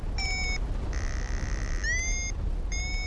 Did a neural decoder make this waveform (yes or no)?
no